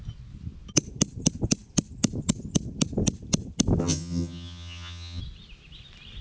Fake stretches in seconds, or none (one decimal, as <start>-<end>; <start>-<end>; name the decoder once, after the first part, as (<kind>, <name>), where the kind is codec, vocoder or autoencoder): 3.8-5.2 (vocoder, HiFi-GAN)